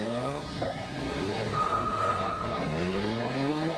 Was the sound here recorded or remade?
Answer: remade